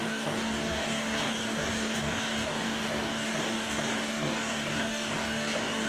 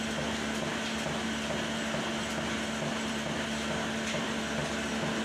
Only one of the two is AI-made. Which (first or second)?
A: first